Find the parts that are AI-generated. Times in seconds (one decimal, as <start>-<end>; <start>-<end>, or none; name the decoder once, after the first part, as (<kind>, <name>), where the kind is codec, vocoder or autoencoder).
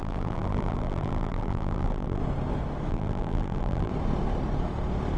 0.0-2.2 (vocoder, BigVGAN v2); 2.9-3.9